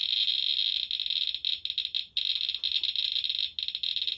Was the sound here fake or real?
real